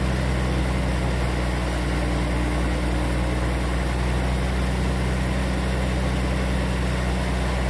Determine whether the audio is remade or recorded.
recorded